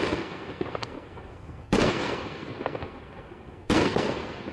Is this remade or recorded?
remade